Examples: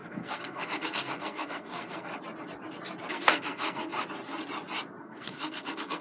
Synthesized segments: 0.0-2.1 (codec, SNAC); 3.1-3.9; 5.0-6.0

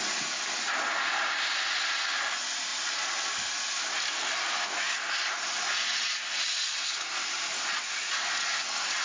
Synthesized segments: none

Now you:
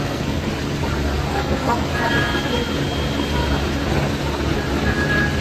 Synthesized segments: 0.0-0.5 (codec, SNAC); 1.3-1.9

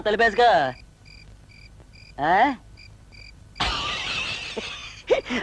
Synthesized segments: none

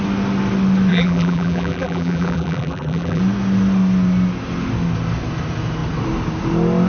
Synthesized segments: 0.9-3.2 (vocoder, BigVGAN v2)

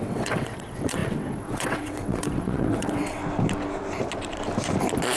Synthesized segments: 0.0-3.2 (vocoder, WaveNeXt)

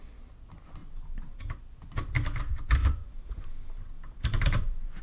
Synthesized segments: 0.8-1.7 (vocoder, BigVGAN v2); 2.8-5.0

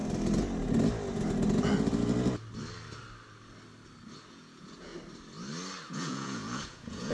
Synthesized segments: 4.3-4.9 (vocoder, Vocos); 5.9-7.1